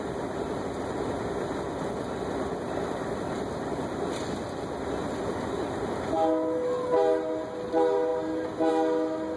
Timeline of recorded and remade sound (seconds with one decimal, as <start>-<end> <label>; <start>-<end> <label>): 0.0-9.4 recorded